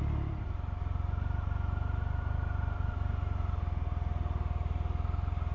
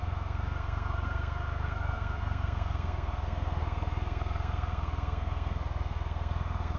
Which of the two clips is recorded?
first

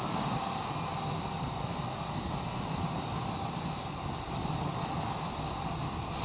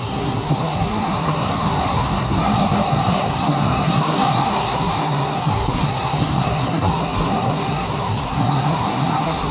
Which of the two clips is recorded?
first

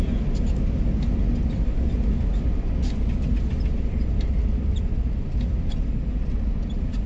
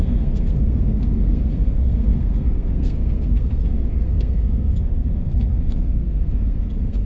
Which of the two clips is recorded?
first